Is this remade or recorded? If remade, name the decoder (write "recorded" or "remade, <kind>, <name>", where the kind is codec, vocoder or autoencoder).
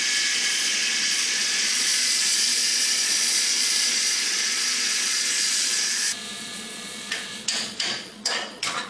remade, vocoder, Vocos